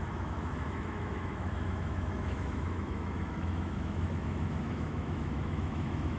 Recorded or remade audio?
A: remade